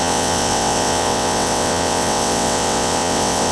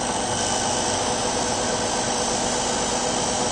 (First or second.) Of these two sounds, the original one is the second